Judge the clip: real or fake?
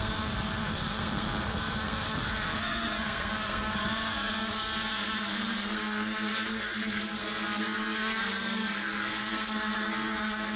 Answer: fake